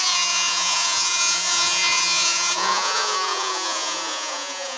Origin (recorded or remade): remade